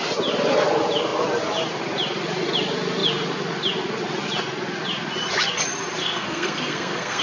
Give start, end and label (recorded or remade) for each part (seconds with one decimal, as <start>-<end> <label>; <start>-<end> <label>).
0.0-6.0 recorded; 6.0-7.2 remade